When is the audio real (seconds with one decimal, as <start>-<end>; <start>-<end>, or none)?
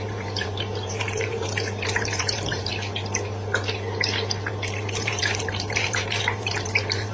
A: 2.7-4.5